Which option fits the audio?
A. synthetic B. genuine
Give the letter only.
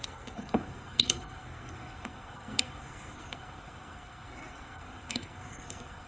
A